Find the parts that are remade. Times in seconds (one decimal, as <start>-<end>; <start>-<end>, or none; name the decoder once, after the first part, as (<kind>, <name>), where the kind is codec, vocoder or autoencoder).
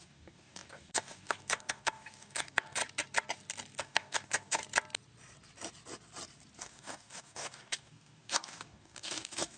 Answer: 0.0-2.8 (codec, DAC); 3.8-4.6; 6.6-9.6